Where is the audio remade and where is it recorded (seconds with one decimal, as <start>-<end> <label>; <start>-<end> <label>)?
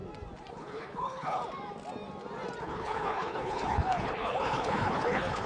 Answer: 0.0-0.5 recorded; 0.5-1.4 remade; 1.4-2.6 recorded; 2.6-5.5 remade